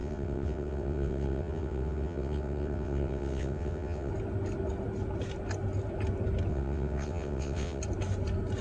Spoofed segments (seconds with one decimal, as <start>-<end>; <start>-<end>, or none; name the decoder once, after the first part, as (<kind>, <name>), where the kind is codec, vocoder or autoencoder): 0.0-4.1 (vocoder, WaveNeXt); 6.5-7.8